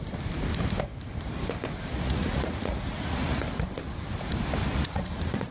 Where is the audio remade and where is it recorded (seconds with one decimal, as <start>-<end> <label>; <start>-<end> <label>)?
0.0-1.9 recorded; 1.9-3.4 remade; 3.4-4.7 recorded; 4.7-5.5 remade

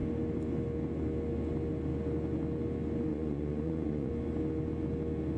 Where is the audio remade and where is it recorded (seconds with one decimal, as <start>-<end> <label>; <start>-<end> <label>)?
0.0-3.1 recorded; 3.1-4.1 remade; 4.1-5.4 recorded

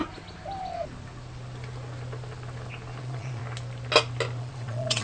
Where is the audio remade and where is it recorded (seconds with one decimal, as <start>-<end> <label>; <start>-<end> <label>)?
0.0-3.0 recorded; 3.0-3.4 remade; 3.4-4.4 recorded; 4.4-5.0 remade

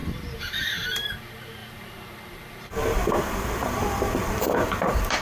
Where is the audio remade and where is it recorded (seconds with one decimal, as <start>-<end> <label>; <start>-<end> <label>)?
0.0-0.6 recorded; 0.6-5.2 remade

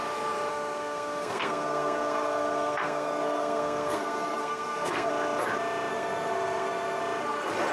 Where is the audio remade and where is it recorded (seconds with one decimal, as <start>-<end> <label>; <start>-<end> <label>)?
0.0-0.5 recorded; 0.5-5.1 remade; 5.1-5.9 recorded; 5.9-7.0 remade; 7.0-7.7 recorded

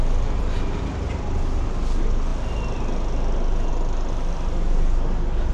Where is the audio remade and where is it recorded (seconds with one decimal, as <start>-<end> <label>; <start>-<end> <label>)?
0.0-5.5 recorded

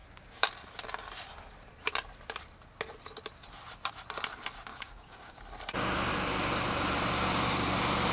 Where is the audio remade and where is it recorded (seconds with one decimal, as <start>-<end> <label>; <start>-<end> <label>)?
0.0-0.5 remade; 0.5-4.7 recorded; 4.7-5.4 remade; 5.4-8.1 recorded